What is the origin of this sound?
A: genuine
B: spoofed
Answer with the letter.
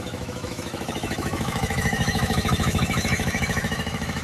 B